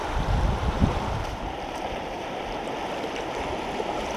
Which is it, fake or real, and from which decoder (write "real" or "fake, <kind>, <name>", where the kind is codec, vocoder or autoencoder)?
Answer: fake, vocoder, BigVGAN v2